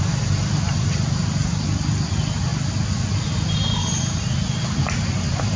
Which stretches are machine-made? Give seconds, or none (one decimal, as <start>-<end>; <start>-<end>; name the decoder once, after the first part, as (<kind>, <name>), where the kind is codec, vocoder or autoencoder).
none